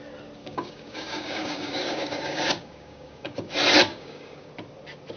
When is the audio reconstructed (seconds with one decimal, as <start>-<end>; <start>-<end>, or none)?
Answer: 0.4-3.5; 3.9-4.5